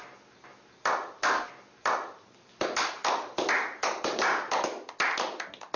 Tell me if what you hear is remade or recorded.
recorded